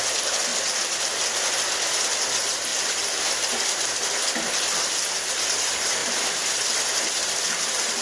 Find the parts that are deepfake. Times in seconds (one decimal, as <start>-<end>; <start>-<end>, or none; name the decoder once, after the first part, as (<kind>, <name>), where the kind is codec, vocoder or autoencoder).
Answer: 2.7-3.9 (vocoder, BigVGAN v2); 6.0-7.5